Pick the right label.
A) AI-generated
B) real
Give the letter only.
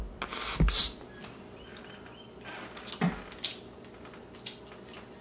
B